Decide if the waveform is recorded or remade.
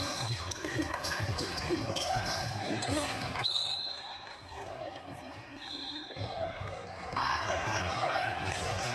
remade